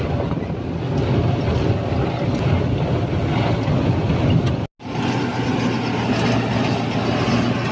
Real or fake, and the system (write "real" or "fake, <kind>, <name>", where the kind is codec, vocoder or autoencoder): real